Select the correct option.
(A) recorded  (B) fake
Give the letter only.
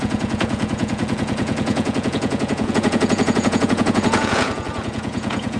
B